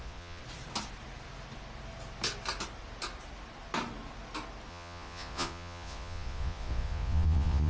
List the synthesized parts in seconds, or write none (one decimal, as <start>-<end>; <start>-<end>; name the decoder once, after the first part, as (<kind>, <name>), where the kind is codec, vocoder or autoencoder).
0.0-0.4 (vocoder, Vocos); 4.7-7.7